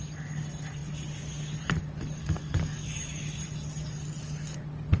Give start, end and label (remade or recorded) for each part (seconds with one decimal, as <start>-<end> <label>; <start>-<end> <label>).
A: 0.0-2.2 recorded; 2.2-3.2 remade; 3.2-5.0 recorded